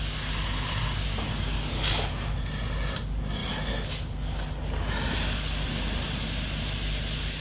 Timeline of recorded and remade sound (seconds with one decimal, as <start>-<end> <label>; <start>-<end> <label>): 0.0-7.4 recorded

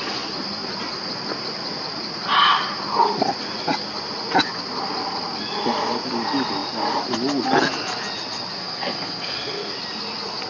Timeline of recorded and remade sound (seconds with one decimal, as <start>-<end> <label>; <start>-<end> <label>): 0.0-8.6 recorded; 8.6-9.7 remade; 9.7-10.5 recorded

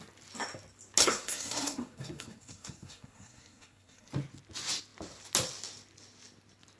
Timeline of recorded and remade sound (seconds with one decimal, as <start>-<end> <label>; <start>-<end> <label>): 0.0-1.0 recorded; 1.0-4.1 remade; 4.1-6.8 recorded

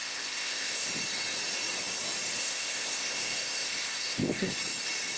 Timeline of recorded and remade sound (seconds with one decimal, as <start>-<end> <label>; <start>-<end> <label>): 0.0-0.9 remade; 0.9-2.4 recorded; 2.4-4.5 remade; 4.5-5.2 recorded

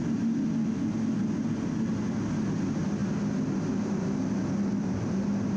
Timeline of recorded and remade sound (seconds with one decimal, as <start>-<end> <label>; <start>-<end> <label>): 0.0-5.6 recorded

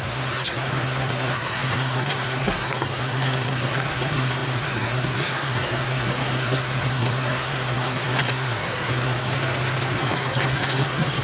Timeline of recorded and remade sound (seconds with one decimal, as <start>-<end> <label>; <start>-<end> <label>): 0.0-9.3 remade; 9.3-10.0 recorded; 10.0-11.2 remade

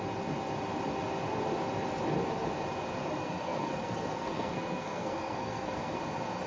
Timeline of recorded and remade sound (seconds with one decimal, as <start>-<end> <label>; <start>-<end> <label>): 0.0-3.2 recorded; 3.2-6.0 remade; 6.0-6.5 recorded

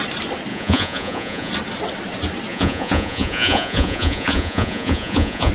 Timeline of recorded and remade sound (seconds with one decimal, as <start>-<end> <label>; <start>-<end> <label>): 0.0-0.5 recorded; 0.5-1.5 remade; 1.5-2.5 recorded; 2.5-5.5 remade